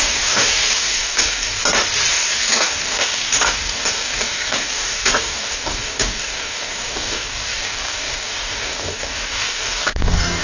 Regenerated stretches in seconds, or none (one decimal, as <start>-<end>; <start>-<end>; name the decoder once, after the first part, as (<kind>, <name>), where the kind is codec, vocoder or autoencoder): 0.0-1.6 (codec, DAC); 2.1-10.4

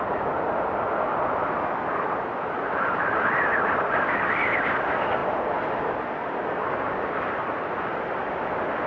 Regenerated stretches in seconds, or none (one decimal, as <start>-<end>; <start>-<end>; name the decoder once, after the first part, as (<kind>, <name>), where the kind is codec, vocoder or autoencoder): none

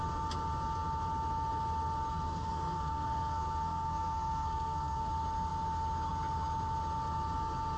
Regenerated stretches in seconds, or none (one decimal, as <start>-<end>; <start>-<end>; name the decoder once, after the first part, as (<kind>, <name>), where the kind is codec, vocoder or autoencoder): 2.1-5.1 (codec, SNAC)

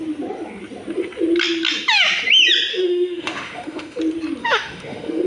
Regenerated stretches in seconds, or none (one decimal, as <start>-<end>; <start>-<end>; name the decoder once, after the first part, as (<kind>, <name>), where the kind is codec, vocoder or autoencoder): 2.7-4.0 (autoencoder, DAC-VAE); 4.4-5.3

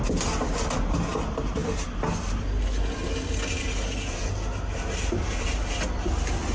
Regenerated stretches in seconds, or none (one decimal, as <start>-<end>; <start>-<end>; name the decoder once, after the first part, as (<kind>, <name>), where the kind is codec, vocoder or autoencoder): none